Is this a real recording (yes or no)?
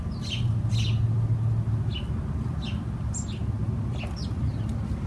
yes